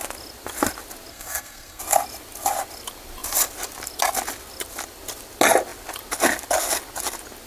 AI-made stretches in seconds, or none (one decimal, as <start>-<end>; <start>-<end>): 1.1-1.8